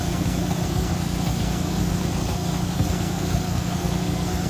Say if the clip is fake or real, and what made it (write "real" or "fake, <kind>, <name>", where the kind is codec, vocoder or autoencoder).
fake, codec, SNAC